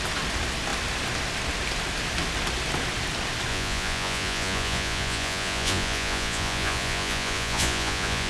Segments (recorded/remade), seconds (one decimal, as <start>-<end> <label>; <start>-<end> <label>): 0.0-3.5 recorded; 3.5-8.3 remade